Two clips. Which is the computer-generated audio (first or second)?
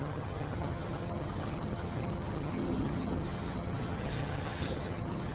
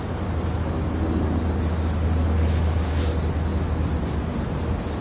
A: first